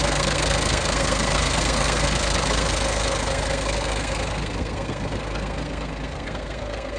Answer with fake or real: fake